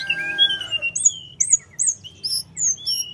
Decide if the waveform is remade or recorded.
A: recorded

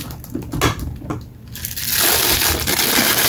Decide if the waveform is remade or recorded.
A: recorded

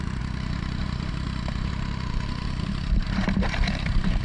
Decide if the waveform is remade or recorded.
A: remade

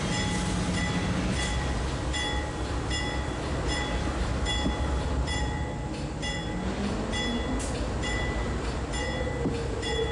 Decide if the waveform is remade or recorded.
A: recorded